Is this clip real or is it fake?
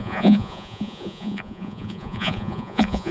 fake